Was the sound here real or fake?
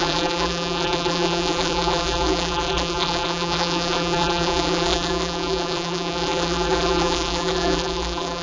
fake